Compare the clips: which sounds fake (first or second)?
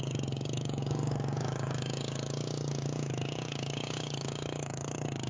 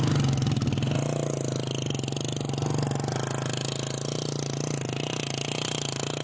first